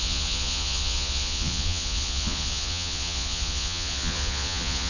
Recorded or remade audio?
remade